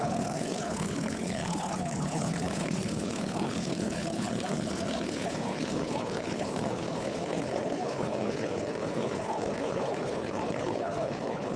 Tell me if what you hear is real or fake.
fake